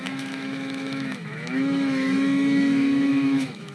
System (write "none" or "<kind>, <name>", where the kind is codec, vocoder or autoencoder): autoencoder, DAC-VAE